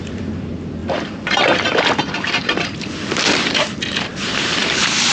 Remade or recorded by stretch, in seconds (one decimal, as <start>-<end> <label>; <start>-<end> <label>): 0.0-4.1 remade; 4.1-4.6 recorded; 4.6-5.1 remade